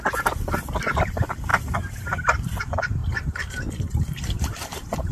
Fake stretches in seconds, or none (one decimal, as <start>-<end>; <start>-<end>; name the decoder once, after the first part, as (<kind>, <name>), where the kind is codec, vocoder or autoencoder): 0.0-1.5 (vocoder, BigVGAN v2); 2.6-3.0; 3.8-5.1